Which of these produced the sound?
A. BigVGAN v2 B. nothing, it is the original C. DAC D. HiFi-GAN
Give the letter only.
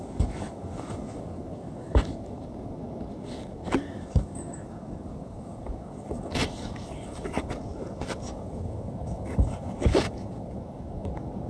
C